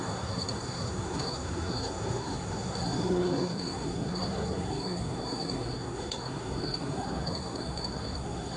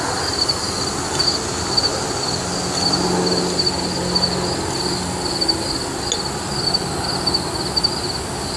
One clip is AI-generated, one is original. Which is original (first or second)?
second